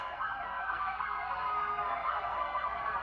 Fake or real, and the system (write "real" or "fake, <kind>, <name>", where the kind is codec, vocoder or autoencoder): fake, codec, SNAC